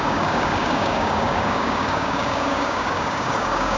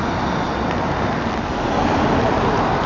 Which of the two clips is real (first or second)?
second